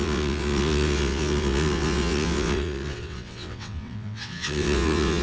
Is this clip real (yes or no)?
no